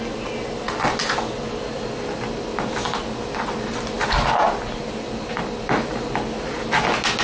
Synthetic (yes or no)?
no